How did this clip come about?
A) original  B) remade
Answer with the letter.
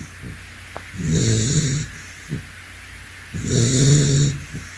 A